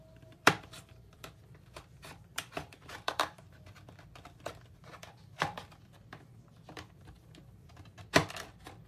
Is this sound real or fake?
fake